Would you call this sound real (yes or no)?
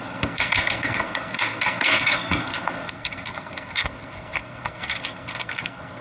no